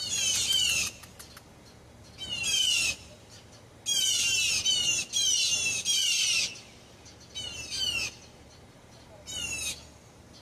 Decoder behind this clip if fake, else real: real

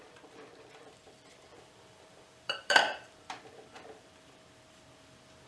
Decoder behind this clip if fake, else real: fake, vocoder, BigVGAN v2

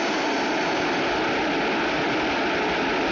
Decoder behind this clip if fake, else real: real